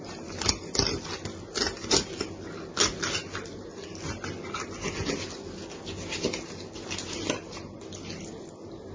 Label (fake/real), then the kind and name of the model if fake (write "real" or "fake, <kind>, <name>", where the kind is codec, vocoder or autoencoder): real